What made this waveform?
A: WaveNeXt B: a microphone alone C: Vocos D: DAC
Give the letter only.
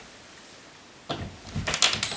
B